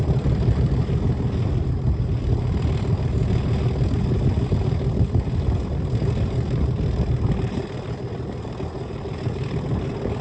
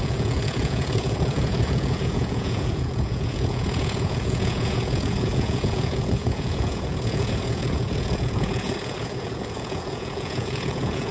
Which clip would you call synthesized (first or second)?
second